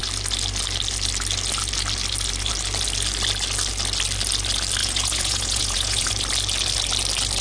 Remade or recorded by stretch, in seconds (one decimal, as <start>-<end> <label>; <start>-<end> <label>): 0.0-4.8 recorded; 4.8-6.1 remade; 6.1-7.4 recorded